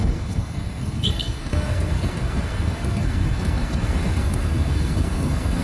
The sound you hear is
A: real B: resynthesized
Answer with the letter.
B